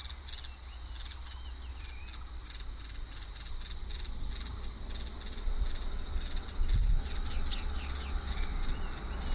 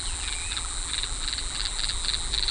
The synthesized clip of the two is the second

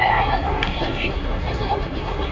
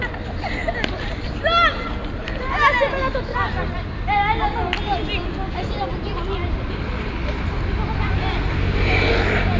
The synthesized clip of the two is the first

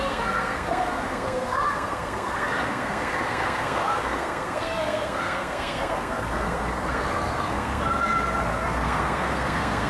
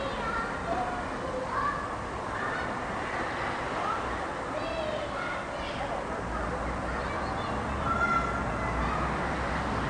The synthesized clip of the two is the first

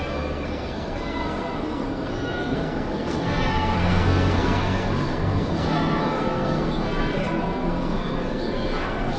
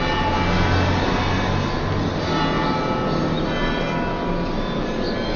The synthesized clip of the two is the first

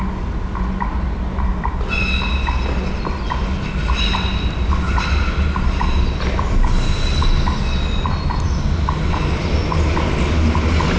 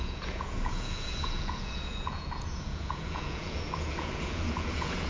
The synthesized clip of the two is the second